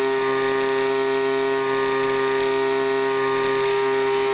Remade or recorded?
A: recorded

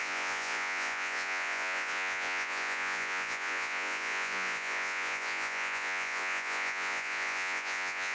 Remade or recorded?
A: remade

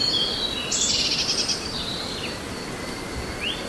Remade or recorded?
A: recorded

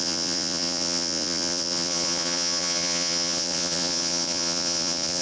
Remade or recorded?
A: remade